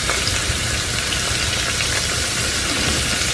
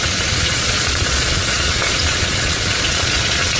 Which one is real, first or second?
first